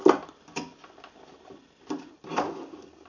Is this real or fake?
real